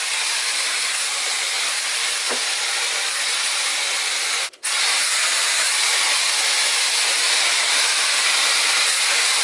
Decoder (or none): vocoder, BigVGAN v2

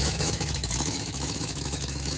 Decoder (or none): autoencoder, DAC-VAE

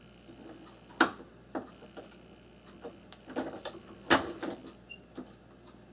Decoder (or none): none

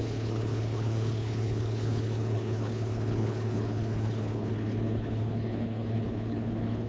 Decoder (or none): codec, HILCodec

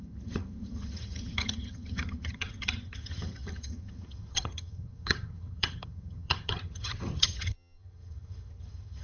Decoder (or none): vocoder, HiFi-GAN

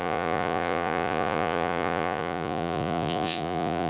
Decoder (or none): vocoder, Vocos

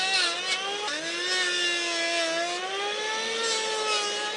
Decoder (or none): none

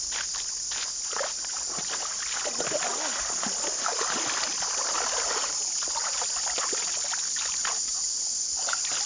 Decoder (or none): none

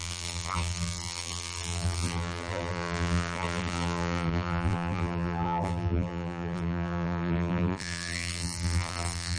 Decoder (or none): vocoder, BigVGAN v2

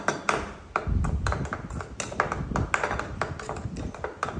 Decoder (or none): none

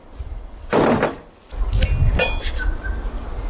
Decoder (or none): none